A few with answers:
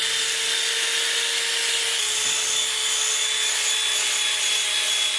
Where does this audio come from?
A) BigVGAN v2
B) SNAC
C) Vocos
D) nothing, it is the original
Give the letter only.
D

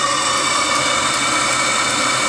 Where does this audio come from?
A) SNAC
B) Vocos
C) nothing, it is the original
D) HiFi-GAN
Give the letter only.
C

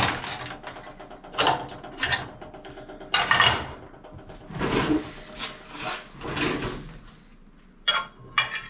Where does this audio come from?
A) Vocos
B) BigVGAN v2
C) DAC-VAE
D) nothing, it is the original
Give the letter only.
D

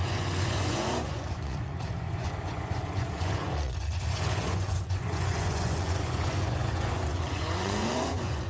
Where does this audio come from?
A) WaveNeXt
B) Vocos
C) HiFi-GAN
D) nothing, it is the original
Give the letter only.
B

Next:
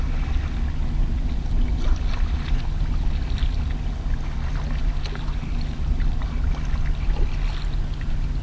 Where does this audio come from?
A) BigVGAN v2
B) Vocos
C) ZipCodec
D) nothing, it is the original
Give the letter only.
D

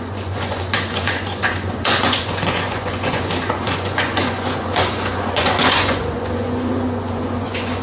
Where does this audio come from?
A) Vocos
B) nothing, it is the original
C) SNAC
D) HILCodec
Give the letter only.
A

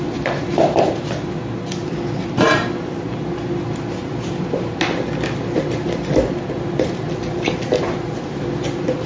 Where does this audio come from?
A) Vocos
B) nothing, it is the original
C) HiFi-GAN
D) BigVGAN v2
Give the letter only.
B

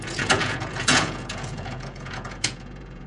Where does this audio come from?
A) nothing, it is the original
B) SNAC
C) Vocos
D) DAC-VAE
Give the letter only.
C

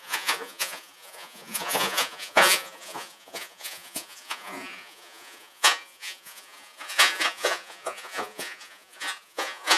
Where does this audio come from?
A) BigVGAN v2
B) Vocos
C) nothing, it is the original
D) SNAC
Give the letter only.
B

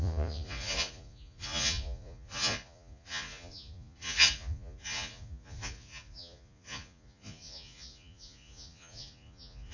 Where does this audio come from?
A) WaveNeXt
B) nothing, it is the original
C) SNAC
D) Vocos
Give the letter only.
D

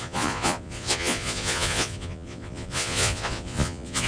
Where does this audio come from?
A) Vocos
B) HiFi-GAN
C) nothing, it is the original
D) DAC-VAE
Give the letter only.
A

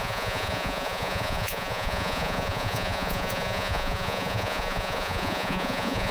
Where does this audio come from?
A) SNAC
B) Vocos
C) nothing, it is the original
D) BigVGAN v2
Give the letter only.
B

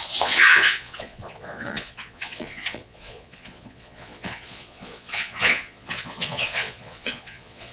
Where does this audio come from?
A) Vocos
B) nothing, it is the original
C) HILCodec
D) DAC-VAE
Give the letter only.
A